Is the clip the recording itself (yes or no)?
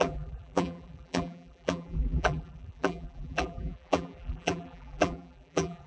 no